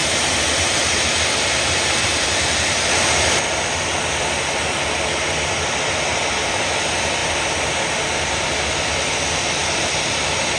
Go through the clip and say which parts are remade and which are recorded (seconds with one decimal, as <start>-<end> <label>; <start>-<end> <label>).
0.0-7.2 remade; 7.2-8.7 recorded; 8.7-10.6 remade